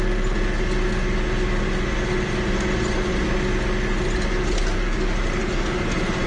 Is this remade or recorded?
recorded